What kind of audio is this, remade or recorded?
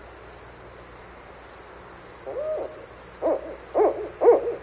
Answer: recorded